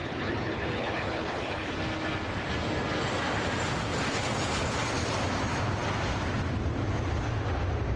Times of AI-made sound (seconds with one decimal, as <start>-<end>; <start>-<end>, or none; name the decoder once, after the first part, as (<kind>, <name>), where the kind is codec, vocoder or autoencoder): 0.0-1.7 (codec, HILCodec); 4.1-4.9